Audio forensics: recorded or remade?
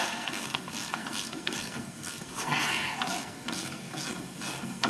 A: remade